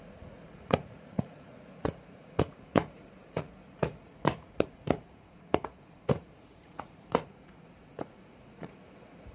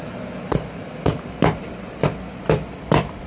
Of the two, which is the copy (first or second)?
first